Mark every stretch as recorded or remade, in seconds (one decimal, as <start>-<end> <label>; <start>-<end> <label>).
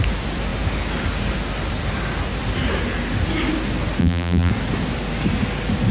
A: 0.0-4.0 recorded; 4.0-4.5 remade; 4.5-5.9 recorded